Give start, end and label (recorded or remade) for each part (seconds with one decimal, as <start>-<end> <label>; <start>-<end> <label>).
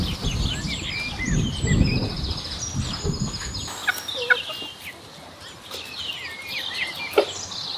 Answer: 0.0-2.0 recorded; 2.0-2.5 remade; 2.5-7.8 recorded